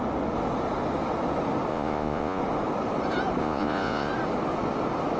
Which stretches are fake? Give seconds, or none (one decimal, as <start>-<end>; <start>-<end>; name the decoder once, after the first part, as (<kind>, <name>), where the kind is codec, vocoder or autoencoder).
1.7-2.4 (vocoder, Vocos); 3.4-4.1